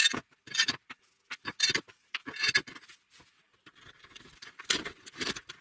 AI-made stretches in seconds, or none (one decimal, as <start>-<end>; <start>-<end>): 0.0-0.8; 4.2-5.6